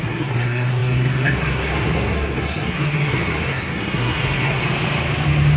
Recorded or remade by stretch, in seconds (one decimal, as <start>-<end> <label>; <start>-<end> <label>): 0.0-4.6 remade; 4.6-5.6 recorded